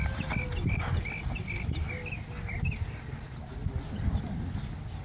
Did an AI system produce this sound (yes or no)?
no